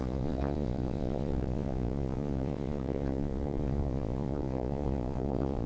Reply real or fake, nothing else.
fake